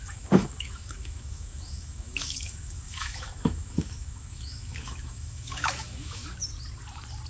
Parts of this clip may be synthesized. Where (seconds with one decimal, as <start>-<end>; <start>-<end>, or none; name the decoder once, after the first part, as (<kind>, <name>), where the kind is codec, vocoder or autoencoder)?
0.0-6.2 (autoencoder, DAC-VAE)